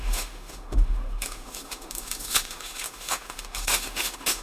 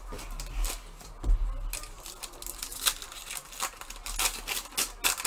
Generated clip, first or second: first